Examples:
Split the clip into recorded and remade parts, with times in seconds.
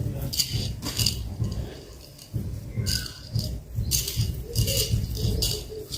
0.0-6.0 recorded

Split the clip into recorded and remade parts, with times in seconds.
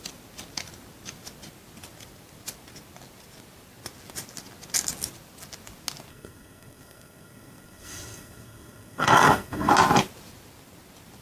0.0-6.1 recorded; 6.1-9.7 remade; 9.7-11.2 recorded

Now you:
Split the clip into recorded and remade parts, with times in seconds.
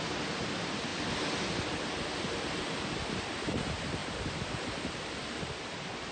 0.0-0.9 remade; 0.9-2.6 recorded; 2.6-6.1 remade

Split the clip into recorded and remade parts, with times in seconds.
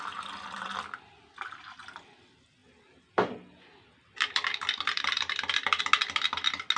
0.0-2.6 recorded; 2.6-5.8 remade; 5.8-6.8 recorded